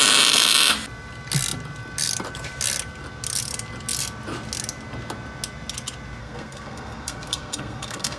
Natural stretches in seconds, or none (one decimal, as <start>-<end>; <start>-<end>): 0.0-6.2